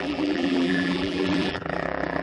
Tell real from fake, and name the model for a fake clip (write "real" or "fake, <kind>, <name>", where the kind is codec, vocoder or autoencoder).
fake, vocoder, BigVGAN v2